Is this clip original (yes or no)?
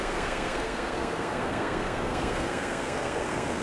no